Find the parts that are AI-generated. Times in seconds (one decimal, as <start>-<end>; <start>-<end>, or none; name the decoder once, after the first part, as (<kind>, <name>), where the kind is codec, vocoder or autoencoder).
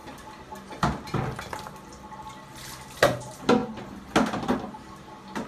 none